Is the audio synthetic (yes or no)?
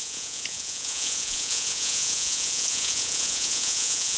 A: yes